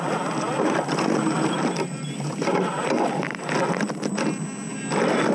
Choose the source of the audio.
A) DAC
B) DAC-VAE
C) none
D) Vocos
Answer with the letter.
C